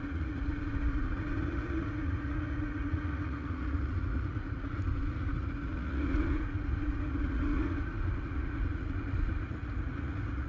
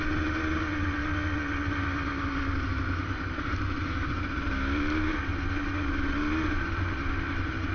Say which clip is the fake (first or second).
first